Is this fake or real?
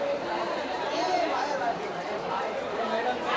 fake